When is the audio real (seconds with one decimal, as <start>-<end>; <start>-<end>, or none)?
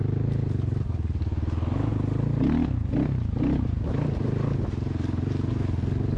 0.0-6.2